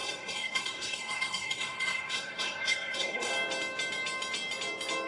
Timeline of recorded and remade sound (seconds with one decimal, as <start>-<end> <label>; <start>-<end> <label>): 0.0-3.3 remade; 3.3-5.1 recorded